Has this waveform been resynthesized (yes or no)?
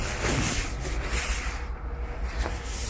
no